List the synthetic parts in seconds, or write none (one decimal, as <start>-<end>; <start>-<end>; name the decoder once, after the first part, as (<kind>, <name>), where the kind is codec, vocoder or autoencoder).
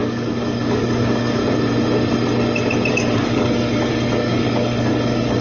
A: 0.0-1.4 (codec, DAC); 2.9-5.4